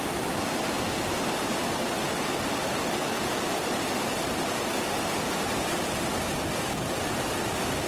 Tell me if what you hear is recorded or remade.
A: recorded